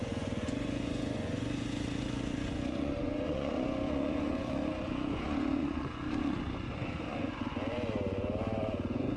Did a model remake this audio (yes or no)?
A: yes